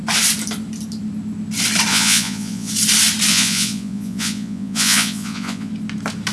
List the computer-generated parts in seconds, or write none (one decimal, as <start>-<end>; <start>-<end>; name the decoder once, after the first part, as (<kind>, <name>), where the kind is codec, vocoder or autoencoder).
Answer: 1.9-2.7 (vocoder, Vocos); 3.3-5.7

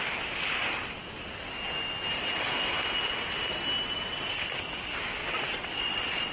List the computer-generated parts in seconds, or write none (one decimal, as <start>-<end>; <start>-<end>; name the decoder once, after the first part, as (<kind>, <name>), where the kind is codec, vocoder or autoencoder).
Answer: 5.2-6.3 (vocoder, Vocos)

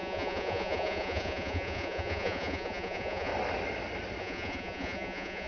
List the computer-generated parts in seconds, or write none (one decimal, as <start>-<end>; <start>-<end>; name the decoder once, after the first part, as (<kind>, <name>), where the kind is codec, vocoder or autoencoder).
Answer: 0.0-3.3 (vocoder, Vocos); 4.2-5.5